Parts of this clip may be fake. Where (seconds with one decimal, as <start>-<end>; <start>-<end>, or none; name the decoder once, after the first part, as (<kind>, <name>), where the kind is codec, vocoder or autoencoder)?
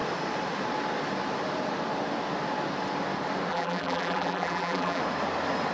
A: 3.5-5.0 (vocoder, BigVGAN v2)